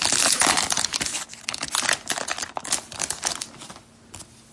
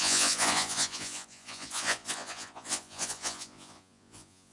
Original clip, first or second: first